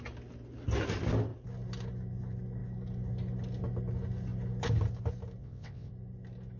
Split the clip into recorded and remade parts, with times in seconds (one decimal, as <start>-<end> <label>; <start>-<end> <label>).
0.0-5.4 recorded; 5.4-5.9 remade; 5.9-6.6 recorded